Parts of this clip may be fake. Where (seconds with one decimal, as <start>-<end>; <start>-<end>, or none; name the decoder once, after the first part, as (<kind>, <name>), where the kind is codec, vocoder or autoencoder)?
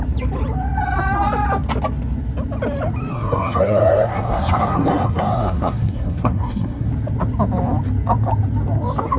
3.1-6.9 (codec, SNAC)